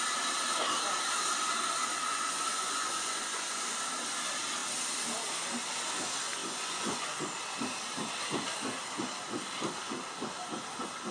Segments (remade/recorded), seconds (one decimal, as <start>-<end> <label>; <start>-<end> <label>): 0.0-2.1 recorded; 2.1-3.8 remade; 3.8-6.4 recorded; 6.4-7.2 remade; 7.2-11.1 recorded